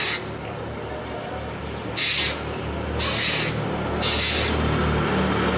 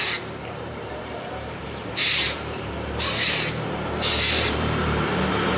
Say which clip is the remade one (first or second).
second